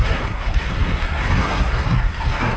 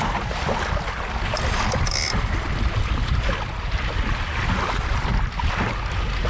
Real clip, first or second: second